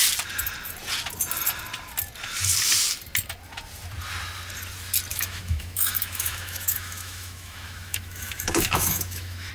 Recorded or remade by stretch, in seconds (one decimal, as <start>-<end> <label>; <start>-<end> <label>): 0.0-5.1 recorded; 5.1-9.5 remade